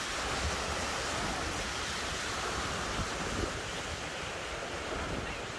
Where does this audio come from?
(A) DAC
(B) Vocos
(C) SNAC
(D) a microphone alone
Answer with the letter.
D